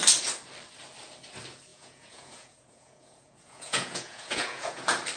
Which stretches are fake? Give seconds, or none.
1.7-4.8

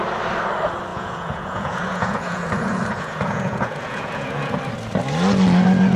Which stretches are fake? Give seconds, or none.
0.9-4.5

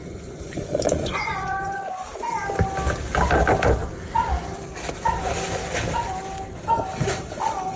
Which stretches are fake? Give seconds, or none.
0.0-2.1

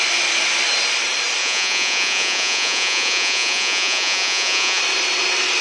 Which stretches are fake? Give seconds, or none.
1.4-4.8

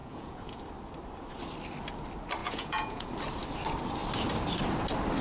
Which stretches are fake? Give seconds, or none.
0.0-0.6; 2.4-3.1

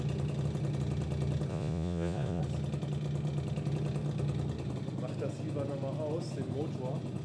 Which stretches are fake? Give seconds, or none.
1.5-2.4